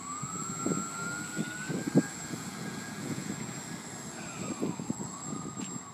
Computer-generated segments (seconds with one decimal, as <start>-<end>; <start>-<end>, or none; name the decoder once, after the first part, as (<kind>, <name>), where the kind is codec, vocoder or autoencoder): 2.1-3.3 (vocoder, Vocos)